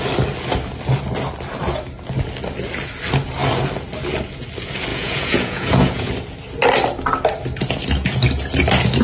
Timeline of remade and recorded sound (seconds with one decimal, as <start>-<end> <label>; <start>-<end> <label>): 0.0-4.9 recorded; 4.9-6.1 remade; 6.1-9.0 recorded